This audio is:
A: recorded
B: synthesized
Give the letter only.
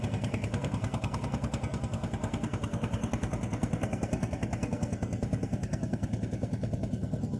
B